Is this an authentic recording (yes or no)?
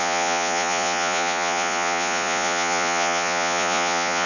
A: no